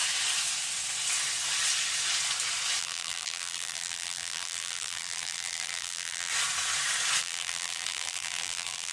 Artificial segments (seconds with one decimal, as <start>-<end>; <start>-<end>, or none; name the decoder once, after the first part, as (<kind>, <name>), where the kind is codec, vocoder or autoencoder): 2.8-6.3 (vocoder, BigVGAN v2); 7.2-8.9